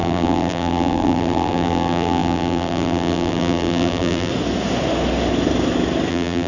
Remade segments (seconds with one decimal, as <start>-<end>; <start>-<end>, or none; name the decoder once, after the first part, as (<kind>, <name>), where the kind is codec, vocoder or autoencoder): 0.0-4.3 (vocoder, BigVGAN v2); 6.1-6.5

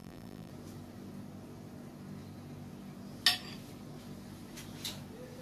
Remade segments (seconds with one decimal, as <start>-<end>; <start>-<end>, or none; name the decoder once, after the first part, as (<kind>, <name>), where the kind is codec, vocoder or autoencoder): 0.0-0.5 (vocoder, BigVGAN v2)

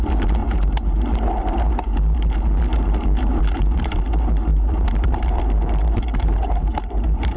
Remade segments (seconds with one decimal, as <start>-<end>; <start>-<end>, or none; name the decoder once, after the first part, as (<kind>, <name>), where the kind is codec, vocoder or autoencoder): 0.4-1.1 (vocoder, BigVGAN v2); 2.7-3.9; 4.5-7.4

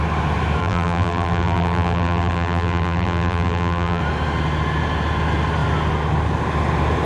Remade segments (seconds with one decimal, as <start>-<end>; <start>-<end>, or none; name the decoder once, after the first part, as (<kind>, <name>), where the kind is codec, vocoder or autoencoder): 0.6-4.0 (vocoder, BigVGAN v2)

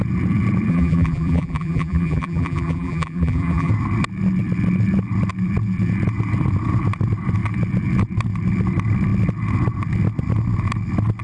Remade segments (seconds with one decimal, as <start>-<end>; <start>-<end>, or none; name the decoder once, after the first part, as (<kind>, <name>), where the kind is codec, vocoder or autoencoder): 0.7-3.7 (vocoder, BigVGAN v2)

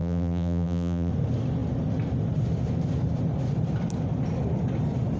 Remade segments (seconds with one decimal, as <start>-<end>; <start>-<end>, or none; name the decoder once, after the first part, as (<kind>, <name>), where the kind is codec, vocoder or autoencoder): 0.0-1.1 (vocoder, BigVGAN v2)